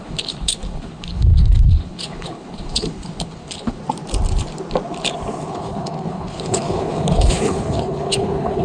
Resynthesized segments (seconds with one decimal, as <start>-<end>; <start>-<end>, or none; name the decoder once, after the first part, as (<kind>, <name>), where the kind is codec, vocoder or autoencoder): 0.0-3.8 (codec, HILCodec); 5.5-8.6

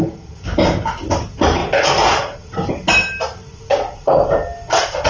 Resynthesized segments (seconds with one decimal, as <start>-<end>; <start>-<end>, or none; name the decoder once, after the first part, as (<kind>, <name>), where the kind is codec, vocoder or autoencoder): none

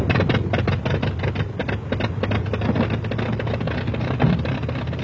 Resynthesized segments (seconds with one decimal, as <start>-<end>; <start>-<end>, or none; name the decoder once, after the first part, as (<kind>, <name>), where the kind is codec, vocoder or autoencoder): none

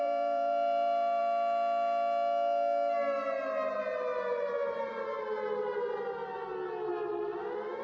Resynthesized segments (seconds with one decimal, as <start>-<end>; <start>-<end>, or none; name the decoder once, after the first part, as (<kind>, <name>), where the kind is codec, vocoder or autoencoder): 0.0-1.2 (vocoder, BigVGAN v2); 4.9-6.2; 6.9-7.8

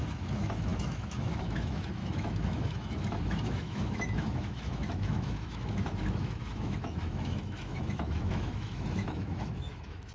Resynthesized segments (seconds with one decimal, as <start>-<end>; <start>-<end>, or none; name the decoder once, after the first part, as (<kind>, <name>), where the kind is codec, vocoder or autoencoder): 0.0-10.1 (autoencoder, DAC-VAE)

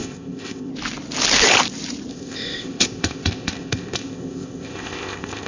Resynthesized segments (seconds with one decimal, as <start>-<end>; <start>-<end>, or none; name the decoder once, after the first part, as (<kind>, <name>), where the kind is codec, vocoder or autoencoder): 0.0-0.7 (codec, ZipCodec); 2.1-5.5